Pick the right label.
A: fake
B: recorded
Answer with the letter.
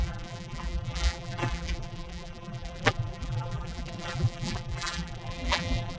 A